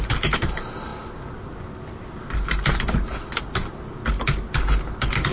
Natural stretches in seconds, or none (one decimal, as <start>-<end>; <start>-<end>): 0.0-5.3